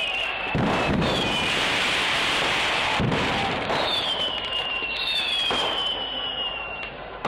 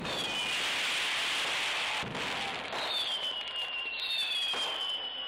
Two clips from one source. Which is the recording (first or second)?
second